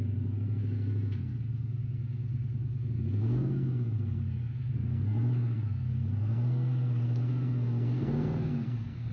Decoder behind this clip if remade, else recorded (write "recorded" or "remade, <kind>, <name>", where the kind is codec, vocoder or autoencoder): remade, codec, SNAC